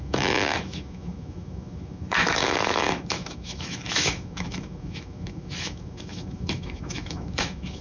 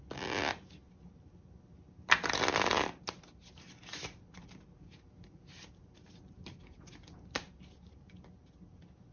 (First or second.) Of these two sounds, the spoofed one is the first